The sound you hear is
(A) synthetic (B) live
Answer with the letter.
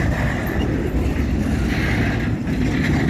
B